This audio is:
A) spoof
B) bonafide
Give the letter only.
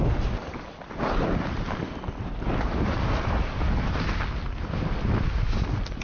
B